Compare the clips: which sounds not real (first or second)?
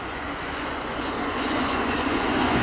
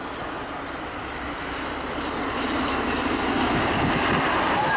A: first